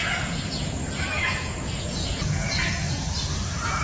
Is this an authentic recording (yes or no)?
no